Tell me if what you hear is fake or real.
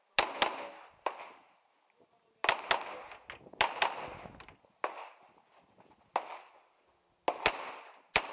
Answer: real